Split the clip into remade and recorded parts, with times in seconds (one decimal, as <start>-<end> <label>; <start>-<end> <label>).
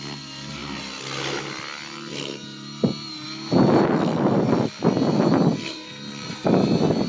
0.0-7.1 recorded